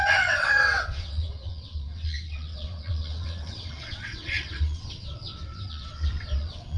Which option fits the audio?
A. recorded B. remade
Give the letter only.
B